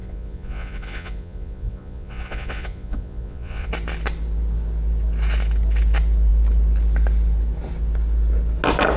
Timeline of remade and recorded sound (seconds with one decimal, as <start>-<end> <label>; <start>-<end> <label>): 0.0-3.7 remade; 3.7-9.0 recorded